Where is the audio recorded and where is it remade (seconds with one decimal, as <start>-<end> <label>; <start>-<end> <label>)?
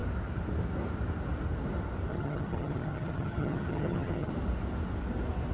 0.0-2.1 recorded; 2.1-4.3 remade; 4.3-5.5 recorded